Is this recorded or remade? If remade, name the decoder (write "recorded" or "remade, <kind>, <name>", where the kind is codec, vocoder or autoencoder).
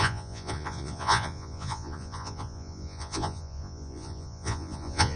remade, vocoder, Vocos